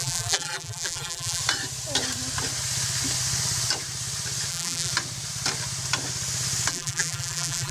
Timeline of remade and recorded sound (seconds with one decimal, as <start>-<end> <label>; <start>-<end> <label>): 0.0-1.4 remade; 1.4-4.5 recorded; 4.5-4.9 remade; 4.9-6.7 recorded; 6.7-7.7 remade